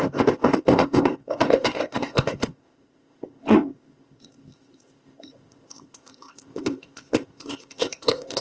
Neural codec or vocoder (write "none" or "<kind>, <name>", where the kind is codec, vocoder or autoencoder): codec, ZipCodec